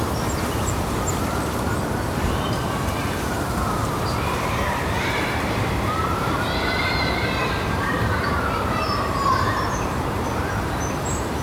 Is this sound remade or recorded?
remade